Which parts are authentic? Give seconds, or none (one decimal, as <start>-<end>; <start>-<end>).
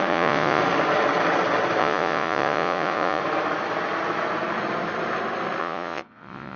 0.6-1.8; 3.2-5.6